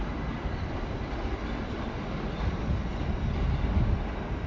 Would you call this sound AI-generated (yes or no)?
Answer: no